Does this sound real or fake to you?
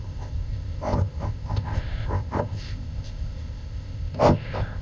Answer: fake